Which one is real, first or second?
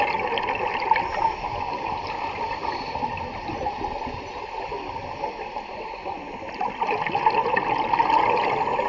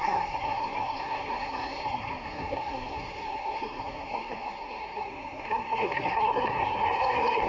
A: first